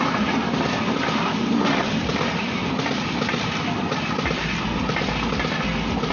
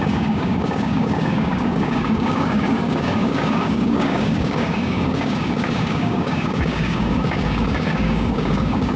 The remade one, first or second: second